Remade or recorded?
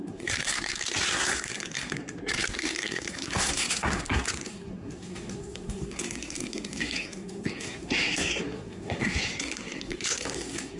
remade